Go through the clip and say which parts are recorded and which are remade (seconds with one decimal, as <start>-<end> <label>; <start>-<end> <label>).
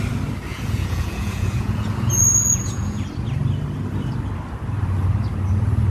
0.0-0.5 recorded; 0.5-3.0 remade; 3.0-5.9 recorded